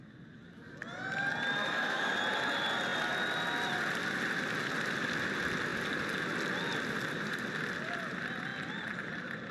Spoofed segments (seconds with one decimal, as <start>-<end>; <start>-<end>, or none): 1.6-2.1